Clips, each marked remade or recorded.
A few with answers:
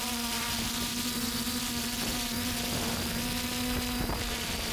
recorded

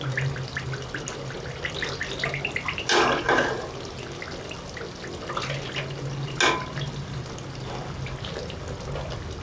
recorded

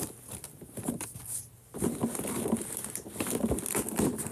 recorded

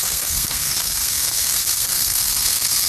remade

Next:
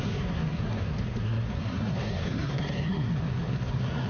remade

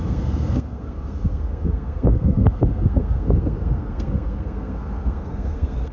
remade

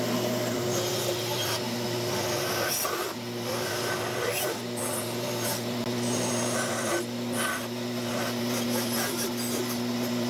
recorded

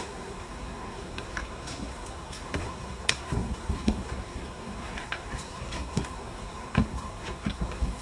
remade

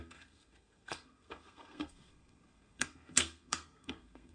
remade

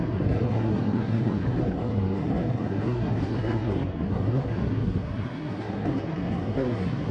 remade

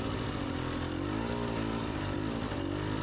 recorded